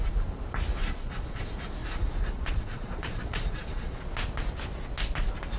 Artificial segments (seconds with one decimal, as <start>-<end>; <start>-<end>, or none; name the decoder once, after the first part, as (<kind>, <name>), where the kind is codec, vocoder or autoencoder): 0.8-1.4 (vocoder, Vocos); 1.8-4.0